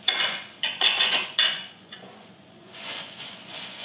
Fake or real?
fake